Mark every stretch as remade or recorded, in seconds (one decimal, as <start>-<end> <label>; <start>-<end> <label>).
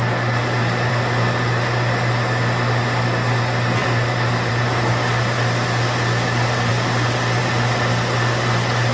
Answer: 0.0-8.9 recorded